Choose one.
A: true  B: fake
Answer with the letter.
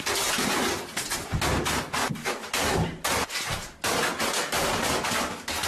A